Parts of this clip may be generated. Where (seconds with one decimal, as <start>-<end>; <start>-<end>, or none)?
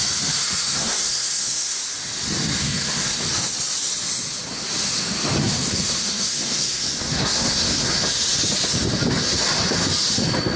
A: 0.4-1.8; 2.6-3.2; 5.4-7.9